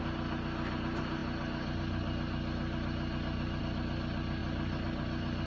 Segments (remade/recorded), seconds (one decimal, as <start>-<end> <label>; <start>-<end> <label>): 0.0-5.5 recorded